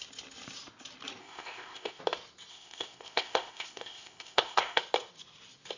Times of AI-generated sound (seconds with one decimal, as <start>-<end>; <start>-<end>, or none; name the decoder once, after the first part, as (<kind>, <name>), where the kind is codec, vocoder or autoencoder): 1.2-2.0 (codec, ZipCodec); 2.5-4.8